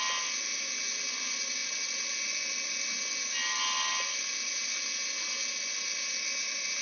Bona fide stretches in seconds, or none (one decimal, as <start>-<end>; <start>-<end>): 0.0-6.8